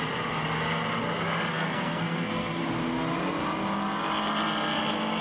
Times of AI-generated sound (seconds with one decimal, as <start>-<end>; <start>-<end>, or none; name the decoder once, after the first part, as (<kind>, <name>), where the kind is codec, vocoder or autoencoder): 1.5-2.6 (codec, SNAC)